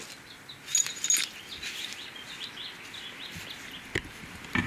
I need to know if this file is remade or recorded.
recorded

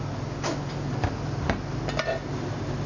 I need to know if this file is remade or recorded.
recorded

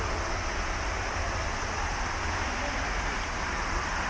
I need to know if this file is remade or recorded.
recorded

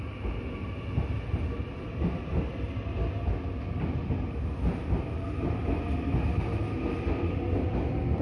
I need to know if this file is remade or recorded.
recorded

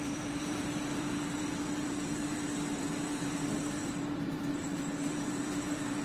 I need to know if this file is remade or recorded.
remade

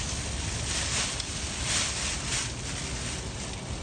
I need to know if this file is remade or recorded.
recorded